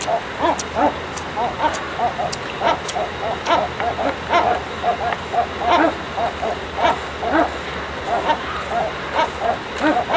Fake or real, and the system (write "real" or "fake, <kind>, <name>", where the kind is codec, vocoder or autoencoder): real